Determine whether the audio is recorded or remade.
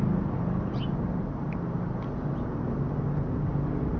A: remade